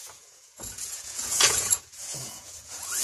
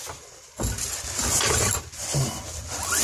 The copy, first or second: first